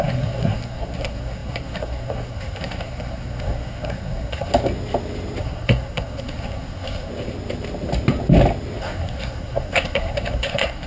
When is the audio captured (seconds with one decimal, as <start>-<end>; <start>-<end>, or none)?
4.5-5.4; 7.1-8.8